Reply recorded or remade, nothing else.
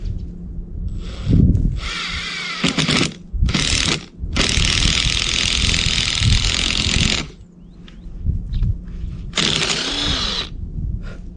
recorded